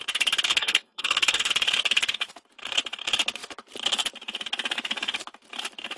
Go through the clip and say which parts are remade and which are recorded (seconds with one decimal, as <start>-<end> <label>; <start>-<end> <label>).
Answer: 0.0-0.5 recorded; 0.5-1.5 remade; 1.5-6.0 recorded